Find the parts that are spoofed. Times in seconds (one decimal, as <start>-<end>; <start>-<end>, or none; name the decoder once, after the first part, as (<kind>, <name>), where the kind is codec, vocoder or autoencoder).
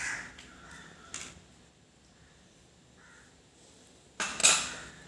none